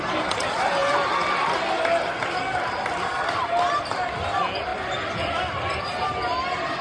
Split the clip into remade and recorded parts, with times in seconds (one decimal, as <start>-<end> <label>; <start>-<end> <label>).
0.0-6.8 recorded